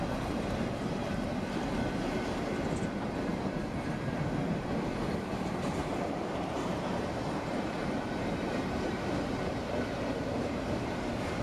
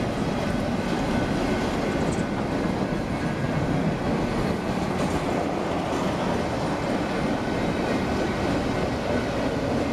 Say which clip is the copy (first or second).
first